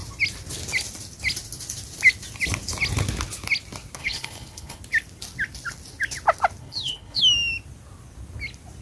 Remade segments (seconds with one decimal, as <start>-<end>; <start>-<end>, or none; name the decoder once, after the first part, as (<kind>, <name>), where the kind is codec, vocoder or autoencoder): 4.0-4.8 (codec, HILCodec); 6.6-7.2